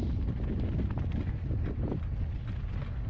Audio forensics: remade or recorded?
recorded